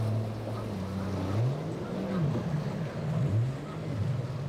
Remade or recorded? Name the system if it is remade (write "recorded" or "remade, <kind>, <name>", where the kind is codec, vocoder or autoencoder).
recorded